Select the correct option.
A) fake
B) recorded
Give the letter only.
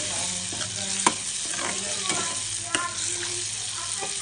B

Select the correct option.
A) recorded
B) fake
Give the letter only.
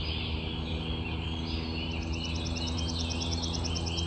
A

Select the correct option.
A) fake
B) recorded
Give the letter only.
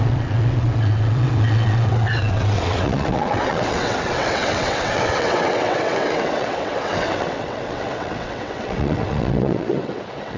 A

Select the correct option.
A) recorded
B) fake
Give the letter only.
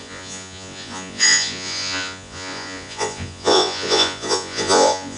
B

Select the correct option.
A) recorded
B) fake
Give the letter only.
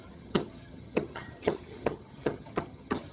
B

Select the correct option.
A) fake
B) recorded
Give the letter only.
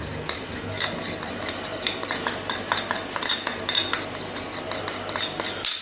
B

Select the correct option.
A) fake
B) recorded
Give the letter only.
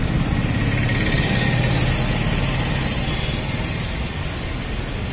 B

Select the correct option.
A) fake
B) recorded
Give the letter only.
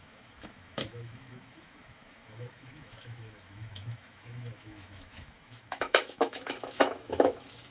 A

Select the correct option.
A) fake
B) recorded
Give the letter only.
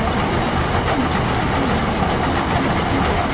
B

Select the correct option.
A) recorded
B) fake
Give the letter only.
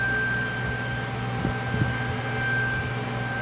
A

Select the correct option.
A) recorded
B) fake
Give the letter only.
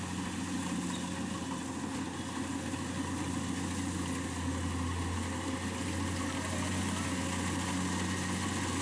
A